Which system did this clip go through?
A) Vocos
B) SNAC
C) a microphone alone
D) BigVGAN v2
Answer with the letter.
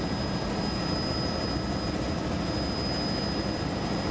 C